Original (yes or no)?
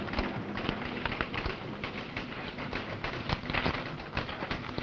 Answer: yes